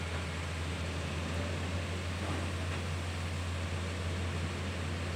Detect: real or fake real